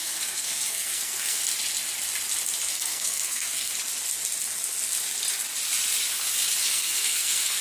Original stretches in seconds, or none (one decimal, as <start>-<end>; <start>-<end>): 1.4-2.7; 3.7-6.6